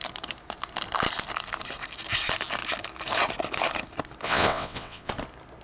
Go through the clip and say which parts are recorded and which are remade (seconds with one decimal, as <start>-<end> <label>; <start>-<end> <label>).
0.0-4.2 recorded; 4.2-5.1 remade; 5.1-5.6 recorded